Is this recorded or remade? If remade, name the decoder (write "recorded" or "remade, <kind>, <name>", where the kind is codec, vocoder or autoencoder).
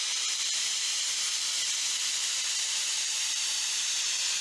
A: remade, vocoder, BigVGAN v2